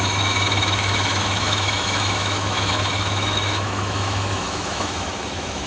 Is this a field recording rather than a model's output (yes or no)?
no